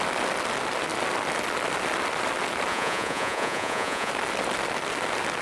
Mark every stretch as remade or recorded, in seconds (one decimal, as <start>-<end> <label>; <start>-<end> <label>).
0.0-2.7 recorded; 2.7-4.1 remade; 4.1-5.4 recorded